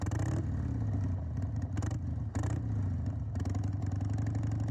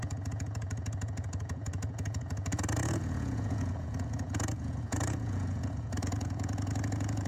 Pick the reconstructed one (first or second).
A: second